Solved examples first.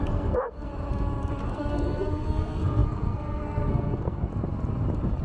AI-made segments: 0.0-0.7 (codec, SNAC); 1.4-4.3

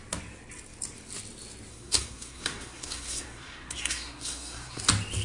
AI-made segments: 1.7-4.8 (codec, SNAC)

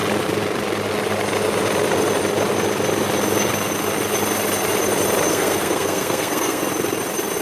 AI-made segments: 5.3-6.6 (codec, SNAC)

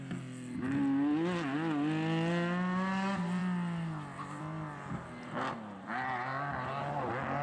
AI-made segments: none